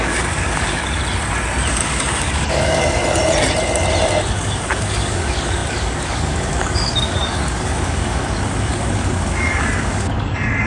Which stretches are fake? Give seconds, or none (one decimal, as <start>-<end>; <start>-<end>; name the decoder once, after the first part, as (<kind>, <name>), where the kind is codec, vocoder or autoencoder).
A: 0.0-1.0 (codec, DAC); 1.7-3.0; 4.3-10.7